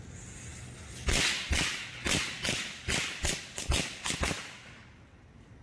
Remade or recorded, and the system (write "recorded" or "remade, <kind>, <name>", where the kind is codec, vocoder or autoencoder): recorded